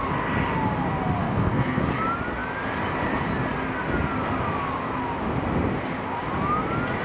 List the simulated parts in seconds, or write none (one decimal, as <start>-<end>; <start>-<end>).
1.2-1.8